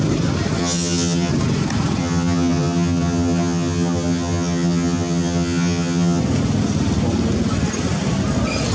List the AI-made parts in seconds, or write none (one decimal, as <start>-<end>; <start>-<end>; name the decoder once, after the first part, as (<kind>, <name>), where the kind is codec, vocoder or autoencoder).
0.6-1.3 (vocoder, HiFi-GAN); 2.0-6.2